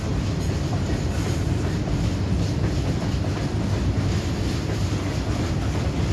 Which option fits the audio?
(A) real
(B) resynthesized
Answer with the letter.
A